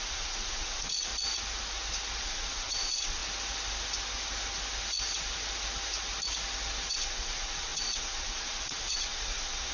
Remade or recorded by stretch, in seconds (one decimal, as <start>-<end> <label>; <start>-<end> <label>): 0.0-1.1 remade; 1.1-2.2 recorded; 2.2-3.2 remade; 3.2-6.9 recorded; 6.9-9.7 remade